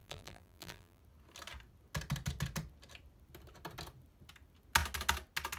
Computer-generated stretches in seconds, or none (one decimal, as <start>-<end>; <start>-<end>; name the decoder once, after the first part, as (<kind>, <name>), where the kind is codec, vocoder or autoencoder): 0.0-1.0 (vocoder, BigVGAN v2)